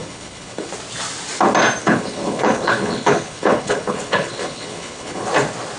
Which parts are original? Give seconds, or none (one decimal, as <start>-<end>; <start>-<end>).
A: 0.7-1.8; 5.3-5.8